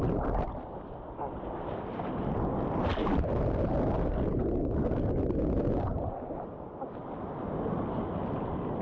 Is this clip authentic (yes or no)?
yes